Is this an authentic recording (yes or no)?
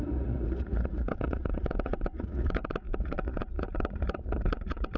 no